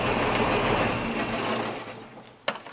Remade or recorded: recorded